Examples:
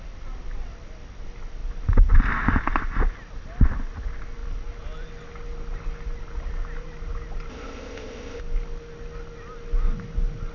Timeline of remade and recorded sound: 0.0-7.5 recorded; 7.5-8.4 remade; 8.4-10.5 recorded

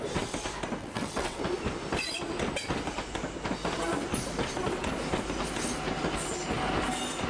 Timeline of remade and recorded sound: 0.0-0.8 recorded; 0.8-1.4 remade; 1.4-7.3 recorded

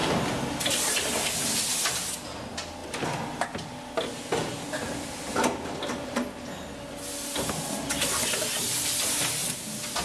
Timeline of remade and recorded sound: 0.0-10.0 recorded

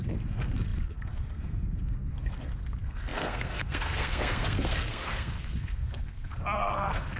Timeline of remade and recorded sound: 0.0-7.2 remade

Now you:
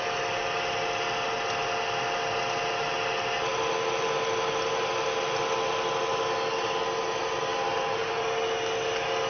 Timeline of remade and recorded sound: 0.0-9.3 recorded

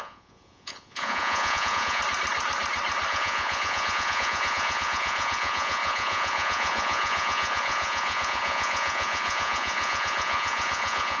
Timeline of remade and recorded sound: 0.0-2.0 remade; 2.0-3.1 recorded; 3.1-11.2 remade

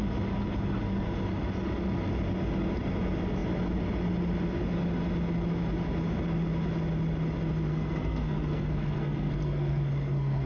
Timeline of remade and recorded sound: 0.0-7.7 recorded; 7.7-10.5 remade